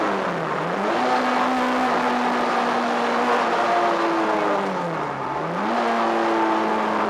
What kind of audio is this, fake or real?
real